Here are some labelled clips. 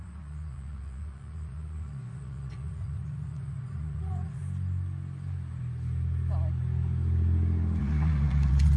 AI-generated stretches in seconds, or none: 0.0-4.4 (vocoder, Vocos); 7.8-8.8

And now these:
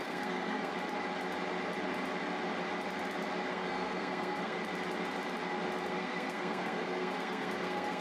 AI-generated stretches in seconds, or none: 0.0-0.7 (codec, SNAC); 3.5-4.6; 5.9-8.0

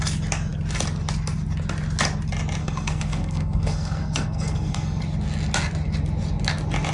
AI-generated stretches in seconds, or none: 2.6-5.0 (codec, SNAC)

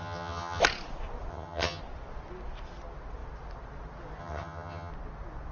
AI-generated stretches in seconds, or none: 0.0-0.6 (vocoder, HiFi-GAN); 1.3-1.8; 4.2-4.9

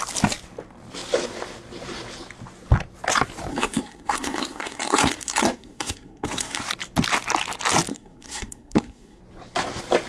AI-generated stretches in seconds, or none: 3.5-6.6 (codec, SNAC); 7.9-9.2

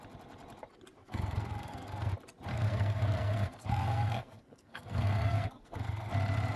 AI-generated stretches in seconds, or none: 1.0-2.1 (codec, SNAC); 2.5-6.1

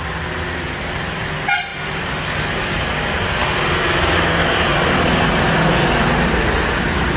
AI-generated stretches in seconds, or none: none

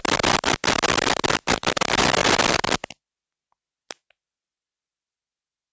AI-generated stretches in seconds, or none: none